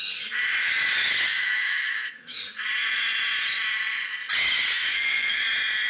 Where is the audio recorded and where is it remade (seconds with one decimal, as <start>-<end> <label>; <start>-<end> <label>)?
0.0-1.3 recorded; 1.3-2.4 remade; 2.4-4.9 recorded; 4.9-5.4 remade; 5.4-5.9 recorded